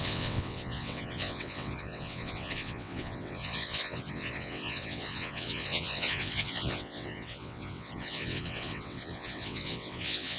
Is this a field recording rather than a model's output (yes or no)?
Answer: no